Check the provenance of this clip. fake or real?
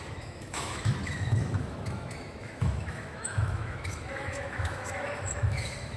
fake